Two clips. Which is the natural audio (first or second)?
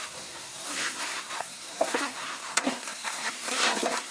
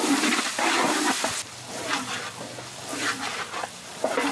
second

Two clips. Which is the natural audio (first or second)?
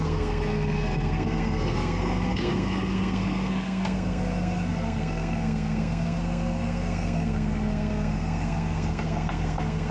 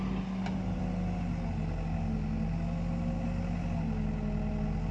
second